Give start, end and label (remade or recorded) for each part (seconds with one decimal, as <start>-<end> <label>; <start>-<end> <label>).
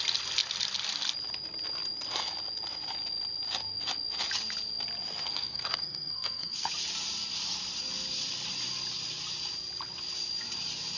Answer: 0.0-5.3 recorded; 5.3-6.7 remade; 6.7-11.0 recorded